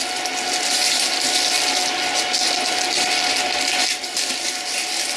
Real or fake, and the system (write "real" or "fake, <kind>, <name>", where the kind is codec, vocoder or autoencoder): real